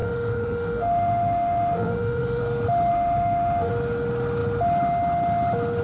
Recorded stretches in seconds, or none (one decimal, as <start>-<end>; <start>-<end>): 2.4-2.9; 3.7-5.8